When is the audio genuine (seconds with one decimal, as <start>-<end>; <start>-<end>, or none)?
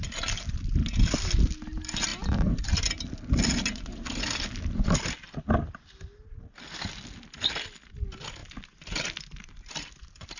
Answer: 0.0-8.4; 10.0-10.4